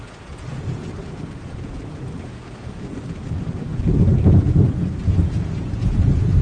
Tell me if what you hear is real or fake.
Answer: fake